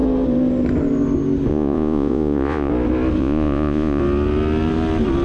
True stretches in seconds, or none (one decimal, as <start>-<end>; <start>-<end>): 0.0-1.5; 2.7-3.2; 4.0-5.2